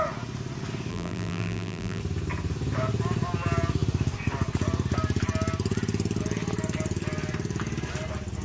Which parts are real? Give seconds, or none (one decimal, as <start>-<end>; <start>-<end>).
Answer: 0.0-0.9; 2.0-8.4